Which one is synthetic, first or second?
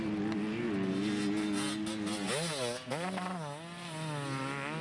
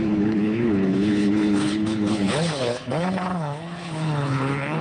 second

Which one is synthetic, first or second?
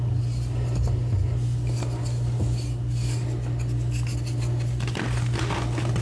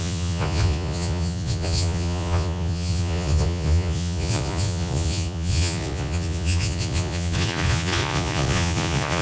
second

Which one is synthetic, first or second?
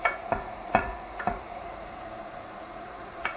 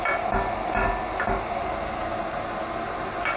first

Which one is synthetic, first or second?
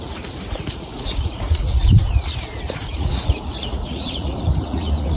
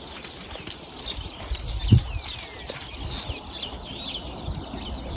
first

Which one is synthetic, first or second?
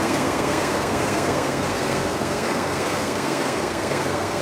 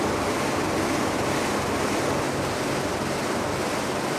first